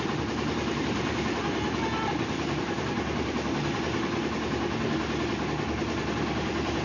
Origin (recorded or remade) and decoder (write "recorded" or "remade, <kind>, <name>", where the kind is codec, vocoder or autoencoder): recorded